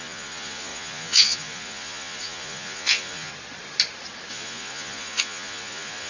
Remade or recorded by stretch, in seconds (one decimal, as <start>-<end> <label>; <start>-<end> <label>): 0.0-3.3 remade; 3.3-4.3 recorded; 4.3-6.1 remade